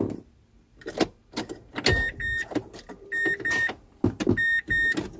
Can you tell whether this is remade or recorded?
recorded